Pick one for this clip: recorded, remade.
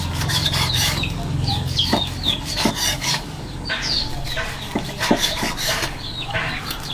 remade